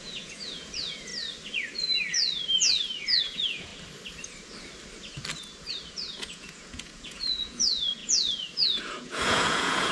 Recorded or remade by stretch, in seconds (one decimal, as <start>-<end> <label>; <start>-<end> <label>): 0.0-1.1 remade; 1.1-3.2 recorded; 3.2-3.7 remade; 3.7-5.9 recorded; 5.9-9.9 remade